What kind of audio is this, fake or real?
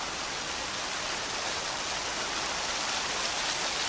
real